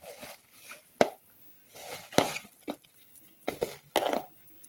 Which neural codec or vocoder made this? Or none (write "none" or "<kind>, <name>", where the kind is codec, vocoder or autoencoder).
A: none